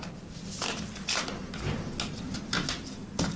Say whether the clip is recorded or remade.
recorded